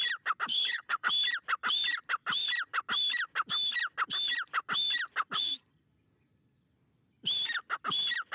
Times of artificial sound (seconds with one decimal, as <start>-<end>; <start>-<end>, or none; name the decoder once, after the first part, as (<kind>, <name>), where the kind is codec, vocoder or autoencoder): 0.5-1.1 (codec, HILCodec)